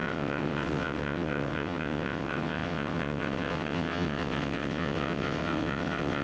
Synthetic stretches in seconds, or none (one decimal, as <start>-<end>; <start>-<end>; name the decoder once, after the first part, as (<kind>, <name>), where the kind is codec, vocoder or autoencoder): 0.0-6.2 (vocoder, WaveNeXt)